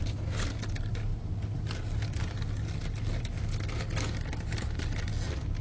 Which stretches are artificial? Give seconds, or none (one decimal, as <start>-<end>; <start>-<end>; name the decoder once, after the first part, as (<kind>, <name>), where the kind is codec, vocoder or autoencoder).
none